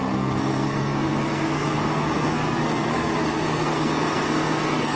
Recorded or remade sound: remade